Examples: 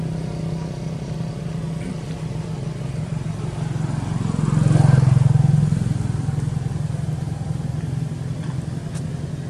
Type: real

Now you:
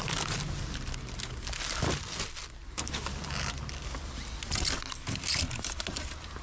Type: real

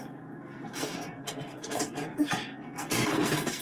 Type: fake